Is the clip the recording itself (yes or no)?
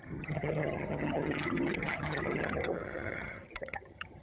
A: no